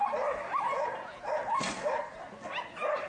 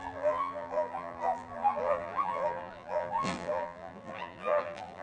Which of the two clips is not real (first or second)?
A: second